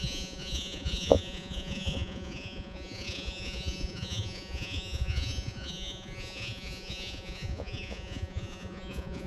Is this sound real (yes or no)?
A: no